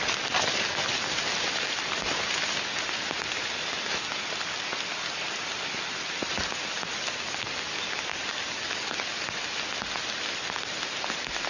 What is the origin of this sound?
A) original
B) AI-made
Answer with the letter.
A